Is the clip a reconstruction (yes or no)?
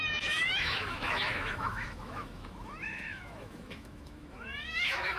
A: yes